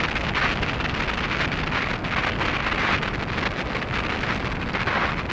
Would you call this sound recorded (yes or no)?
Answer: yes